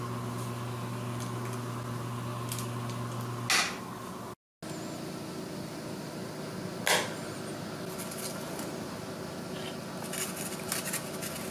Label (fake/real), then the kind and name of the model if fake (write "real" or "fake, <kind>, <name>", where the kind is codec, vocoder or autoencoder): real